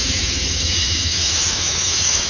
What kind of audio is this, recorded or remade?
remade